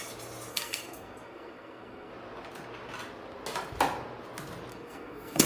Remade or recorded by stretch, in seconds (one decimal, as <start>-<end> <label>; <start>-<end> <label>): 0.0-0.5 recorded; 0.5-2.1 remade; 2.1-4.7 recorded; 4.7-5.5 remade